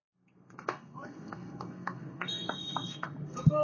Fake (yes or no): yes